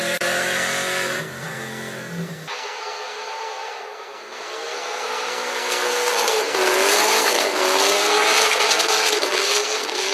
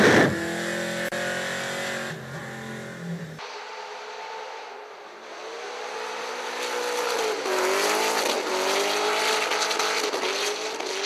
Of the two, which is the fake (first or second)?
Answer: first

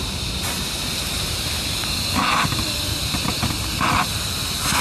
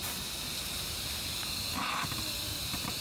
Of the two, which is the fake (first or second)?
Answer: first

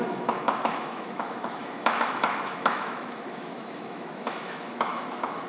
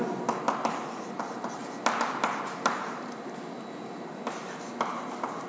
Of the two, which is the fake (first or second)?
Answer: first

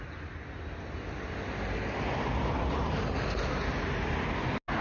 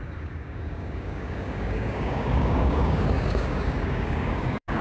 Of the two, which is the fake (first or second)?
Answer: second